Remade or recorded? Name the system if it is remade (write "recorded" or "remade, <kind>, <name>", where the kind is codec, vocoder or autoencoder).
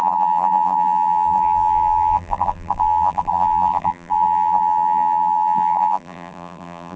remade, vocoder, BigVGAN v2